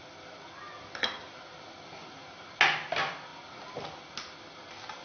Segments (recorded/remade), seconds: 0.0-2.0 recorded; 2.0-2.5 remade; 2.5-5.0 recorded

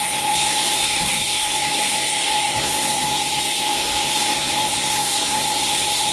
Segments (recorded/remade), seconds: 0.0-6.1 remade

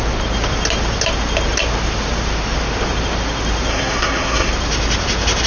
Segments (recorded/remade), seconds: 0.0-3.7 recorded; 3.7-4.5 remade; 4.5-5.5 recorded

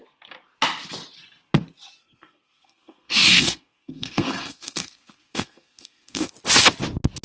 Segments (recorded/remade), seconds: 0.0-2.0 recorded; 2.0-6.3 remade; 6.3-7.2 recorded

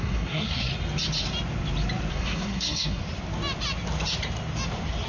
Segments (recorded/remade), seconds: 0.0-0.7 remade; 0.7-2.1 recorded; 2.1-3.0 remade; 3.0-5.1 recorded

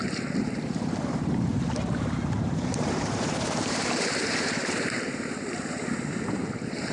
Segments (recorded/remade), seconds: 0.0-6.9 remade